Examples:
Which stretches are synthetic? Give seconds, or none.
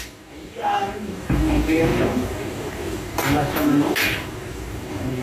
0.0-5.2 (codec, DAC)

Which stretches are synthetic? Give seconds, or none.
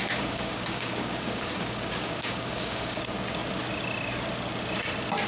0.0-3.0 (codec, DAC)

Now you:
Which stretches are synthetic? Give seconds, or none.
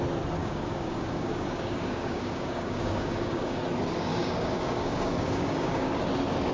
0.4-3.6 (codec, DAC); 4.1-5.9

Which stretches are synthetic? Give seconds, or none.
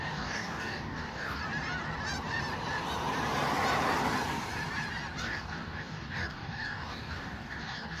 0.0-1.4 (codec, DAC); 5.2-8.0